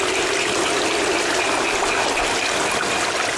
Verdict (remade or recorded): recorded